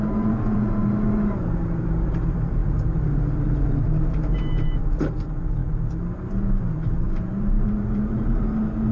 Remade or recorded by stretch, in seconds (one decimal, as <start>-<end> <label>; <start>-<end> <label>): 0.0-8.9 remade